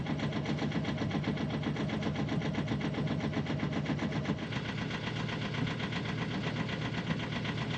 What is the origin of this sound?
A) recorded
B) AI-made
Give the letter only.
A